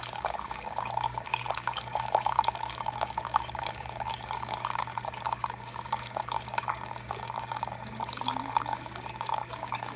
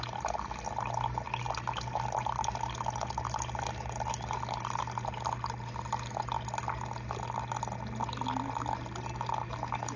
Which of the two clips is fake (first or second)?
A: first